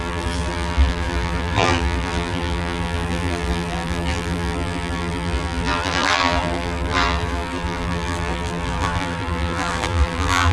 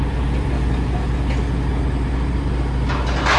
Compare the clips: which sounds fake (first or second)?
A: first